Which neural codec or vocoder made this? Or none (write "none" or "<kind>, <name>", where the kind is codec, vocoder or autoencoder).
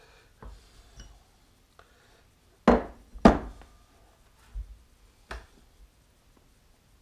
none